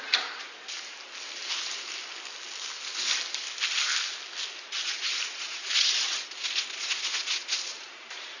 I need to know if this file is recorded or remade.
recorded